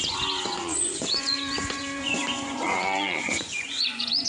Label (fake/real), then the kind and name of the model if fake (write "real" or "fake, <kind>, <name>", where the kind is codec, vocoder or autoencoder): fake, vocoder, Vocos